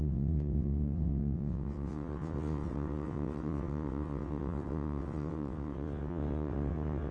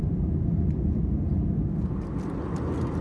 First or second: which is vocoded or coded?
first